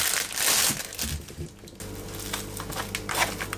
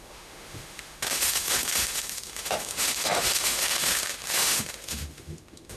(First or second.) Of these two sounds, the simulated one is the second